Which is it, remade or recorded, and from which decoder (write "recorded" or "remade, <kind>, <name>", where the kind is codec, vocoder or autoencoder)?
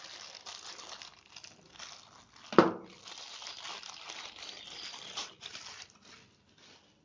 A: recorded